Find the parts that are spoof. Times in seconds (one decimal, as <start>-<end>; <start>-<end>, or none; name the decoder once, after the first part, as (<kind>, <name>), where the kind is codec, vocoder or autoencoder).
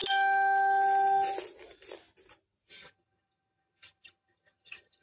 2.7-5.0 (vocoder, HiFi-GAN)